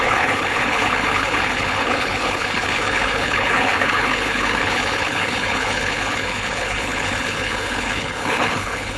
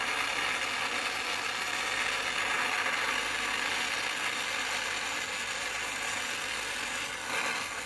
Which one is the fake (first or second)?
first